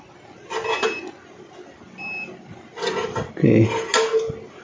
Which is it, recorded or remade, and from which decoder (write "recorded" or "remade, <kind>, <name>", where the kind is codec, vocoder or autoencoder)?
recorded